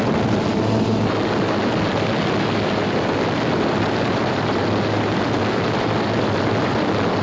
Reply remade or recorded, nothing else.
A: recorded